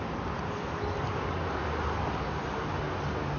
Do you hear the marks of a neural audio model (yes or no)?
no